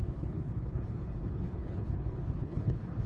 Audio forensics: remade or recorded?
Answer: remade